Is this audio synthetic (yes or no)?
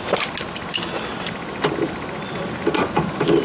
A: no